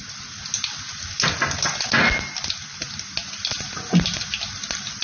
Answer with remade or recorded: recorded